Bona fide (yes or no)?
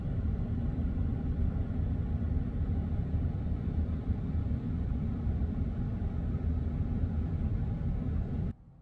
no